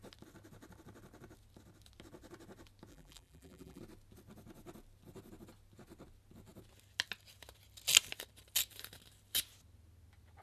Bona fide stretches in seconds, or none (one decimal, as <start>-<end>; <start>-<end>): 0.0-2.9; 3.8-10.4